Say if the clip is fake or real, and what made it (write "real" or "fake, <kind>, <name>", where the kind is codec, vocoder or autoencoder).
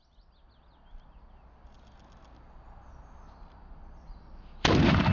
real